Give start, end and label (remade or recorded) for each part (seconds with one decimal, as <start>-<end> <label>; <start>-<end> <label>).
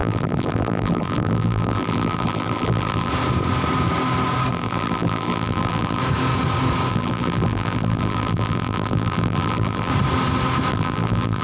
0.0-3.1 remade; 3.1-4.5 recorded; 4.5-6.0 remade; 6.0-6.9 recorded; 6.9-9.9 remade; 9.9-10.7 recorded; 10.7-11.4 remade